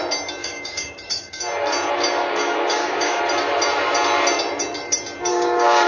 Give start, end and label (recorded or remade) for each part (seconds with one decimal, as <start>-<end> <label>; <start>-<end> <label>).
0.0-0.4 recorded; 0.4-1.4 remade; 1.4-2.2 recorded; 2.2-3.2 remade; 3.2-5.3 recorded; 5.3-5.9 remade